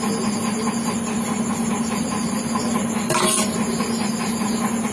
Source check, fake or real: real